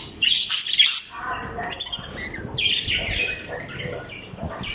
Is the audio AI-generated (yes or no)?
no